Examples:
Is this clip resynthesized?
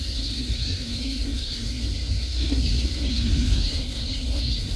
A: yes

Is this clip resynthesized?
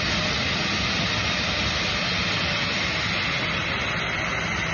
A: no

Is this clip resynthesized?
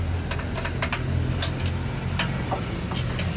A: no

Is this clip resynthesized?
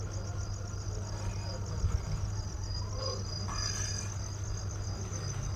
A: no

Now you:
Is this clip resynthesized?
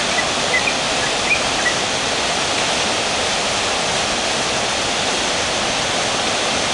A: no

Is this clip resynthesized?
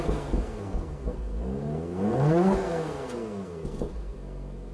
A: yes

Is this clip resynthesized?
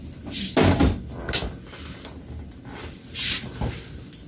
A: no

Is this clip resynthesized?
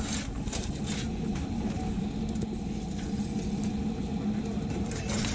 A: no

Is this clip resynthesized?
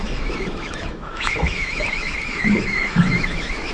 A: yes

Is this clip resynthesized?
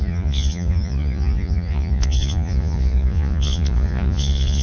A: yes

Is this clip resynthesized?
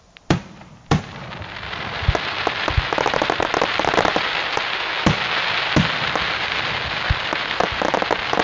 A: no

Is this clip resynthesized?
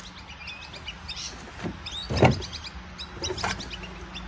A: no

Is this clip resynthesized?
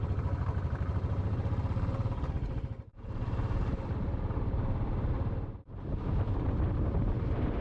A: yes